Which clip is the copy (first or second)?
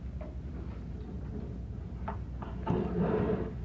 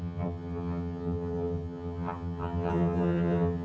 second